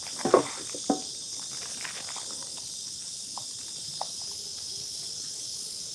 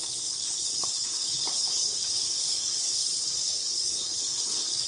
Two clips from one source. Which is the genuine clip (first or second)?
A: first